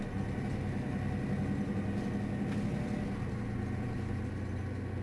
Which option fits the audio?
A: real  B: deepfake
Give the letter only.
A